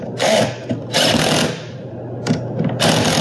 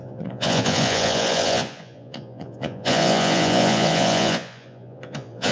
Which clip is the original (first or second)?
first